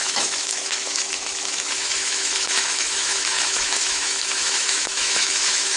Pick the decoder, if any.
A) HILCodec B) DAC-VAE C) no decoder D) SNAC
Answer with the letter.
B